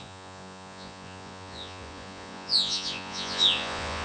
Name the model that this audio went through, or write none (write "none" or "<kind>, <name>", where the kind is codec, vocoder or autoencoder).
vocoder, Vocos